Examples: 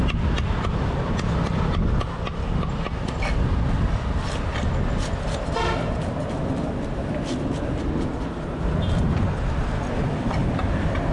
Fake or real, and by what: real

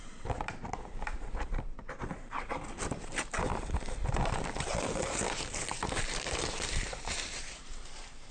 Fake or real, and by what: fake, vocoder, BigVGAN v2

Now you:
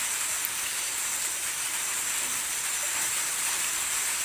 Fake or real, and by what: fake, vocoder, BigVGAN v2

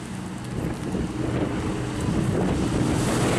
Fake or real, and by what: real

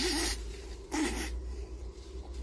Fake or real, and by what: real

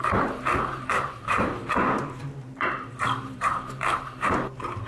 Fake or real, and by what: fake, vocoder, BigVGAN v2